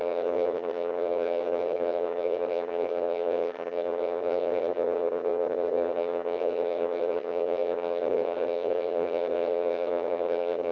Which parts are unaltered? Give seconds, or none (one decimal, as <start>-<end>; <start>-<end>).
none